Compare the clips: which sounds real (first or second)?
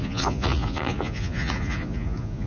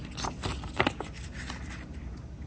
second